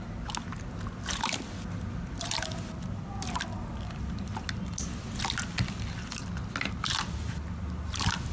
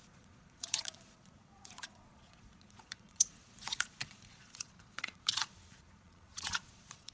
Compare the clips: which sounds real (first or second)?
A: first